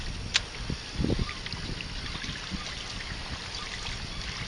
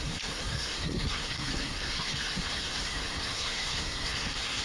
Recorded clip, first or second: first